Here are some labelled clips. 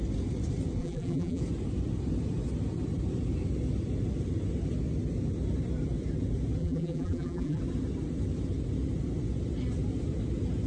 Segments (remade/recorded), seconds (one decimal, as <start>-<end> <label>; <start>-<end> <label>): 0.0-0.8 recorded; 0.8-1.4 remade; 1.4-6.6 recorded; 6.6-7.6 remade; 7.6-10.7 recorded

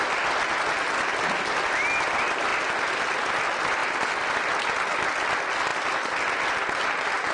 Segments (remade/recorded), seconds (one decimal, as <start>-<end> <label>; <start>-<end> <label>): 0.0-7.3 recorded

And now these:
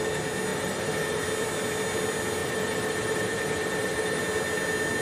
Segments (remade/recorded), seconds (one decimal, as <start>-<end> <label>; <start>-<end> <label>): 0.0-0.5 recorded; 0.5-1.2 remade; 1.2-2.4 recorded; 2.4-4.2 remade; 4.2-5.0 recorded

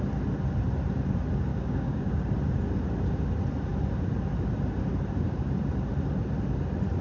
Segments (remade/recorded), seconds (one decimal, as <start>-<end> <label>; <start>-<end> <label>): 0.0-1.5 recorded; 1.5-2.3 remade; 2.3-7.0 recorded